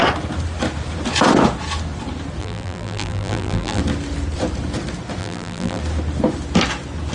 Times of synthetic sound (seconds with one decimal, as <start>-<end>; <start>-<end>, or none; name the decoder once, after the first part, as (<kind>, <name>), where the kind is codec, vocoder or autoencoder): 2.4-3.8 (vocoder, BigVGAN v2); 5.2-5.8